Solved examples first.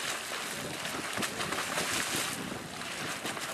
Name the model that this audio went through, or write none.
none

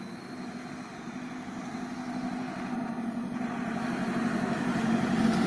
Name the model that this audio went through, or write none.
none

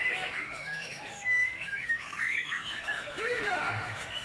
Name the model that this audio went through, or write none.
autoencoder, DAC-VAE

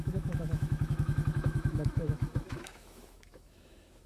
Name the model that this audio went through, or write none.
autoencoder, DAC-VAE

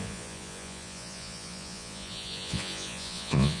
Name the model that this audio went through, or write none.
vocoder, Vocos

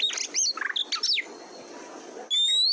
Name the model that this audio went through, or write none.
none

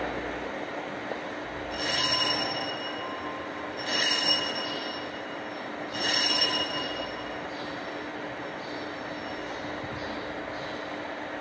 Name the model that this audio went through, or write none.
none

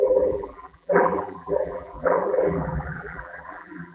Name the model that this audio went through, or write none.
vocoder, BigVGAN v2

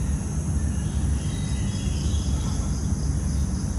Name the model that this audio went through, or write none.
none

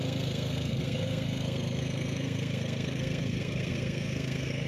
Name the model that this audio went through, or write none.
codec, SNAC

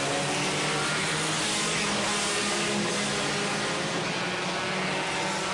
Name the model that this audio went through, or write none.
none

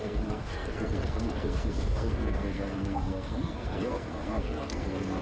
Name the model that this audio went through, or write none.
codec, SNAC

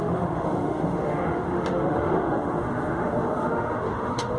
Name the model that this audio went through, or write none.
autoencoder, DAC-VAE